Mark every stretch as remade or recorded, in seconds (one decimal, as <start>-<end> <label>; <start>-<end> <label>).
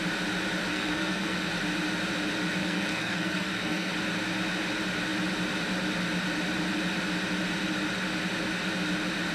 0.0-0.7 recorded; 0.7-1.5 remade; 1.5-2.6 recorded; 2.6-3.9 remade; 3.9-9.3 recorded